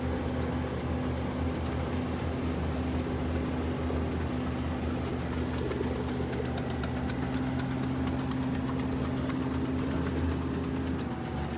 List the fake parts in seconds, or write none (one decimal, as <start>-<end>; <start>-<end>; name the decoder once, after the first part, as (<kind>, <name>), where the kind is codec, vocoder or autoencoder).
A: none